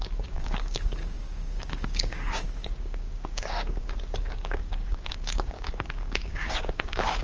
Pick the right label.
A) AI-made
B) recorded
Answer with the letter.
A